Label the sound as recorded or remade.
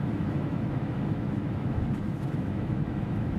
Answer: remade